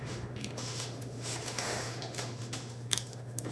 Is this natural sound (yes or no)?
no